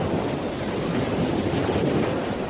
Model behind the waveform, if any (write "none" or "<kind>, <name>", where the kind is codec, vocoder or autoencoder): none